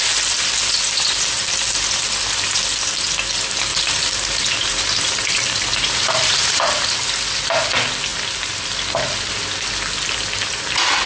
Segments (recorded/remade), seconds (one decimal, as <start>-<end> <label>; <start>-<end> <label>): 0.0-3.7 recorded; 3.7-6.6 remade; 6.6-8.1 recorded; 8.1-8.7 remade; 8.7-11.1 recorded